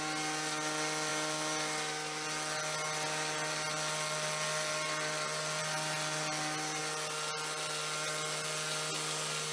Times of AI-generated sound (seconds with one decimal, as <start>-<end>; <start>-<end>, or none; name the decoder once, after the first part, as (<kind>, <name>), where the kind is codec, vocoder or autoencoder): none